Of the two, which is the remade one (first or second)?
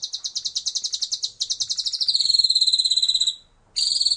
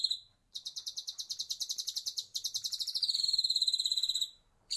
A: second